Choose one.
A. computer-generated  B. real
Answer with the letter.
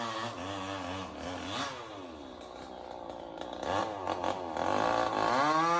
B